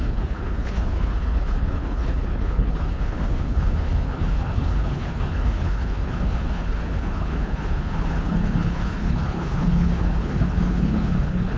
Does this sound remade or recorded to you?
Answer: remade